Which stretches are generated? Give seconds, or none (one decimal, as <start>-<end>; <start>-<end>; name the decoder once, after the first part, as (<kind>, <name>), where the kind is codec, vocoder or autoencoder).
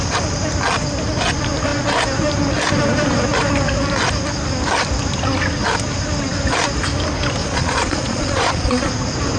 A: 7.4-8.9 (vocoder, Vocos)